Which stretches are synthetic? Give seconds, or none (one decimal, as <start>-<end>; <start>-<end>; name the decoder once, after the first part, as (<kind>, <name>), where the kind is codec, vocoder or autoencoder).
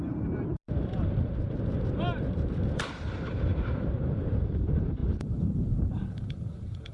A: 0.0-6.9 (vocoder, BigVGAN v2)